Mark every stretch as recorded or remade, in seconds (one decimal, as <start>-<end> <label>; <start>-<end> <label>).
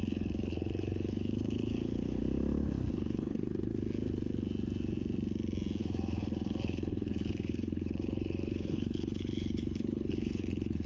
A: 0.0-2.2 remade; 2.2-2.9 recorded; 2.9-3.7 remade; 3.7-5.8 recorded; 5.8-10.9 remade